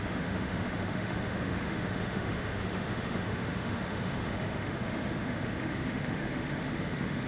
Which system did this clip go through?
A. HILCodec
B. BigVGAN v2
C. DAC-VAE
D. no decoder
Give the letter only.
C